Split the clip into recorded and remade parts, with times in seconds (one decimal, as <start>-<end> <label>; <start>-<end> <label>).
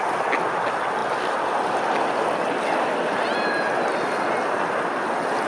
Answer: 0.0-5.5 recorded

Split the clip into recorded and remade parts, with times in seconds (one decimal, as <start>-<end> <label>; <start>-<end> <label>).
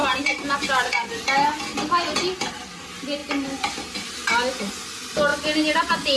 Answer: 0.0-6.2 recorded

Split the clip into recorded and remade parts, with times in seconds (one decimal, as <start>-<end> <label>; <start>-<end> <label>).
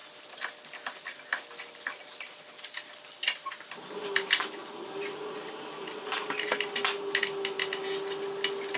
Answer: 0.0-8.8 recorded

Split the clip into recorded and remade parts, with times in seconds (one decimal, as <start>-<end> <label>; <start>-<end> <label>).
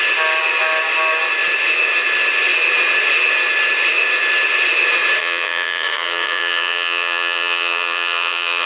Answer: 0.0-5.2 recorded; 5.2-8.7 remade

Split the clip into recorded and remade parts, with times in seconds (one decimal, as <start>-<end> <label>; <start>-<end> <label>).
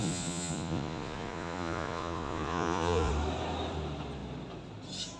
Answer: 0.0-3.1 remade; 3.1-5.2 recorded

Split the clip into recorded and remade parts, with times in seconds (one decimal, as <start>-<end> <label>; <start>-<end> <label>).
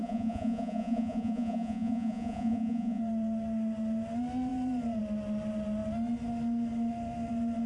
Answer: 0.0-3.0 remade; 3.0-7.7 recorded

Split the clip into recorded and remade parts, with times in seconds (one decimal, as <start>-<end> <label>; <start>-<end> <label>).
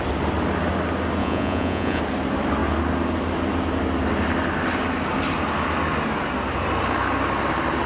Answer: 0.0-1.2 recorded; 1.2-2.0 remade; 2.0-7.9 recorded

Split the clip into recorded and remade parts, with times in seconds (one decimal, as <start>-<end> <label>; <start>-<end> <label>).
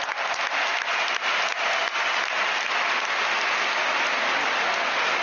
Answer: 0.0-5.2 recorded